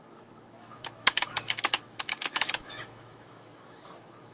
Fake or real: fake